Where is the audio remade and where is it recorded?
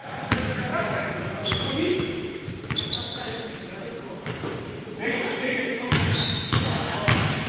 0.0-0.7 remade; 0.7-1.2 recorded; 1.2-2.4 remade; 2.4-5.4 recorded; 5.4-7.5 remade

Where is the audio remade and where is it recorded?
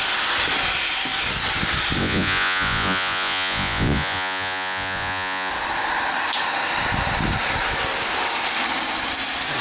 0.0-2.0 recorded; 2.0-5.5 remade; 5.5-9.6 recorded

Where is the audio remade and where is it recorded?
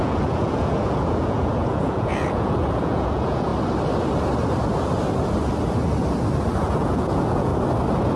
0.0-3.5 remade; 3.5-6.6 recorded; 6.6-7.5 remade; 7.5-8.2 recorded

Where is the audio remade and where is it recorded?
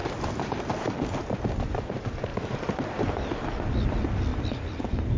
0.0-2.3 recorded; 2.3-2.9 remade; 2.9-4.3 recorded; 4.3-5.2 remade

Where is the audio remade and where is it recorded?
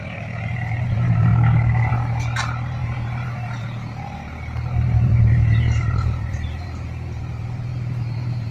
0.0-1.3 remade; 1.3-1.9 recorded; 1.9-8.5 remade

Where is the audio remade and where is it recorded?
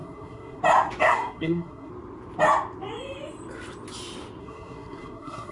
0.0-0.6 remade; 0.6-1.0 recorded; 1.0-1.9 remade; 1.9-4.4 recorded; 4.4-5.5 remade